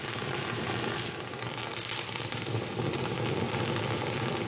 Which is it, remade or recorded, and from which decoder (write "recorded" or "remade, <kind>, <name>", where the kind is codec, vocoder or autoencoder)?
recorded